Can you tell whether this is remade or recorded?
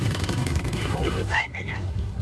remade